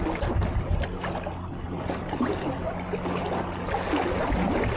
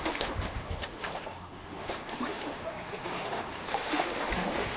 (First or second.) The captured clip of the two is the first